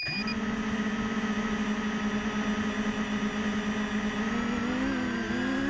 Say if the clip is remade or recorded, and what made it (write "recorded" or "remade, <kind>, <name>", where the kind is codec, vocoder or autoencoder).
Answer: recorded